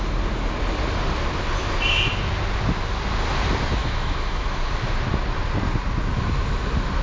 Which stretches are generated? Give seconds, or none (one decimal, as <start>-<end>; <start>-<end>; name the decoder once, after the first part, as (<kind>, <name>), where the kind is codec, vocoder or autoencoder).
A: 3.8-4.5 (autoencoder, DAC-VAE)